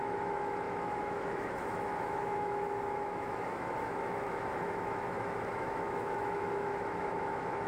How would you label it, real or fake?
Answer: fake